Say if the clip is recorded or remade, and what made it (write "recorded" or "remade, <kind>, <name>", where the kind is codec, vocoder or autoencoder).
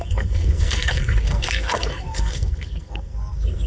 remade, codec, SNAC